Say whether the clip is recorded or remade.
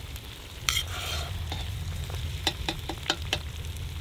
remade